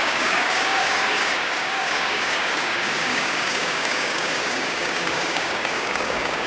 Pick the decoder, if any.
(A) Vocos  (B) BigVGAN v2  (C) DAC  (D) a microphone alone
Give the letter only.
C